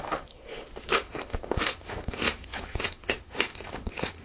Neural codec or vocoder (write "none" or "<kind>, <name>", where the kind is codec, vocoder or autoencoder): autoencoder, DAC-VAE